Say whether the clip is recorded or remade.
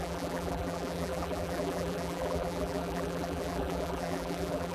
remade